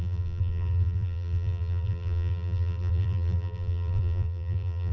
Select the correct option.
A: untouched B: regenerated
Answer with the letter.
B